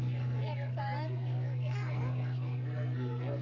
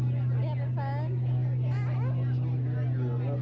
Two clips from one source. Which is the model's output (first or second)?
first